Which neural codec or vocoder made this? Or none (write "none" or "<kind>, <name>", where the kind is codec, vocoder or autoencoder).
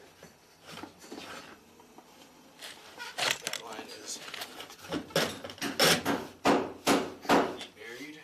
none